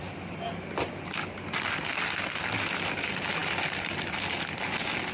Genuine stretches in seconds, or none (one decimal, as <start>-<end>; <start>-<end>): 0.0-5.1